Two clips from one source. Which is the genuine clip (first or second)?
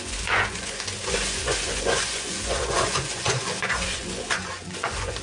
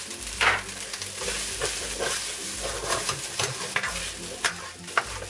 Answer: second